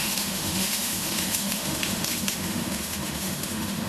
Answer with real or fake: fake